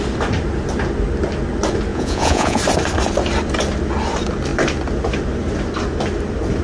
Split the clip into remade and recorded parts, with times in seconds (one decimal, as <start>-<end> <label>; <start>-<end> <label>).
0.0-1.9 recorded; 1.9-2.6 remade; 2.6-6.6 recorded